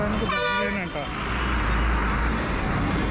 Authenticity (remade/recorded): recorded